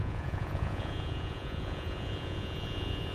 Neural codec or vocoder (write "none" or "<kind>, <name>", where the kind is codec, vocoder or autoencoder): vocoder, Vocos